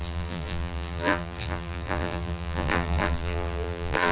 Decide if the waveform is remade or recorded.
remade